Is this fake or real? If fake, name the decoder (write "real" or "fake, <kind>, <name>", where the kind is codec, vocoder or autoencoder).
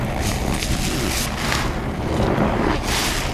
real